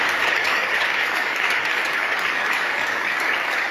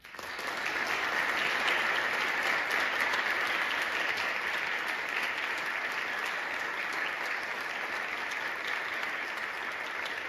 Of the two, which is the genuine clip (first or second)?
second